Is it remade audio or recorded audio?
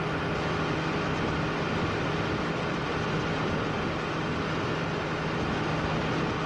recorded